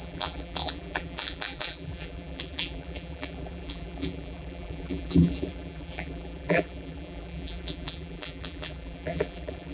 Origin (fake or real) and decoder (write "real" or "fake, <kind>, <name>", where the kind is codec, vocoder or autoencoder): fake, vocoder, BigVGAN v2